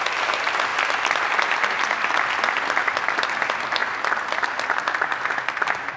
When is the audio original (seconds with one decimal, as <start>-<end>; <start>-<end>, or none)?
0.0-6.0